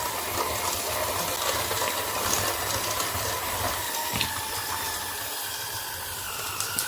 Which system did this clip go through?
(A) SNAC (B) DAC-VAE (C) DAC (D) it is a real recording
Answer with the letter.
D